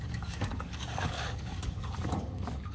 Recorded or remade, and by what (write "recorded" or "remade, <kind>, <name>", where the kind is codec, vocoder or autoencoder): remade, codec, DAC